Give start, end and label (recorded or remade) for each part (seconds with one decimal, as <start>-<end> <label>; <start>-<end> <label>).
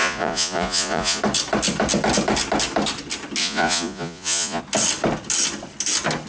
0.0-1.2 remade; 1.2-3.4 recorded; 3.4-4.6 remade; 4.6-6.3 recorded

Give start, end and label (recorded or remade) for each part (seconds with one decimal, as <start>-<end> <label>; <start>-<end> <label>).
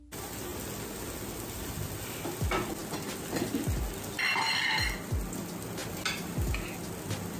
0.0-7.4 recorded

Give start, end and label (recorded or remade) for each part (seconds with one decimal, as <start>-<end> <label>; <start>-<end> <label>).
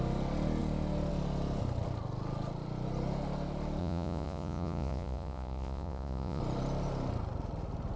0.0-3.8 recorded; 3.8-6.4 remade; 6.4-8.0 recorded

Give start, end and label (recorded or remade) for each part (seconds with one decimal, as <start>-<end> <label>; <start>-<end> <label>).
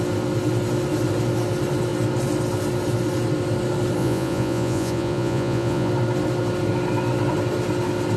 0.0-4.0 recorded; 4.0-5.9 remade; 5.9-8.2 recorded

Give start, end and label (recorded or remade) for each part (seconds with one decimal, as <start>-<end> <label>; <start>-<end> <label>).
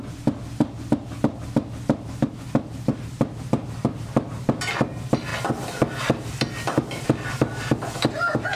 0.0-8.6 recorded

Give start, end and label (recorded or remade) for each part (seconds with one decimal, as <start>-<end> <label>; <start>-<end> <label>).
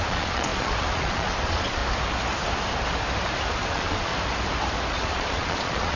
0.0-1.8 remade; 1.8-3.5 recorded; 3.5-4.1 remade; 4.1-4.9 recorded; 4.9-6.0 remade